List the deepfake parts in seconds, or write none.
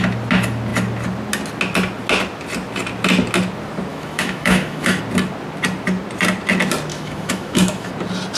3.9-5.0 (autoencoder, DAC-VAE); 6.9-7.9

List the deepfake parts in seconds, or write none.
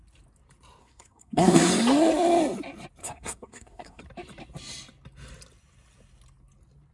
0.8-1.7 (codec, SNAC); 3.0-4.0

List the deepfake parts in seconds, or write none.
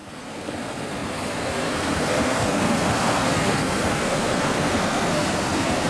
0.0-5.9 (codec, SNAC)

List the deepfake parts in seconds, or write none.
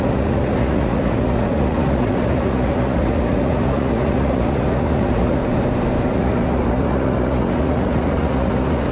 0.0-5.4 (vocoder, Vocos); 6.1-8.9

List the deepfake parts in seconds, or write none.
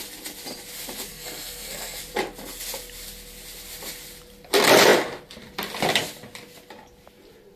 1.1-2.0 (codec, SNAC)